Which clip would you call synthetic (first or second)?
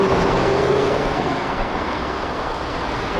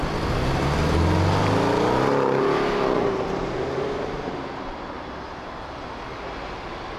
first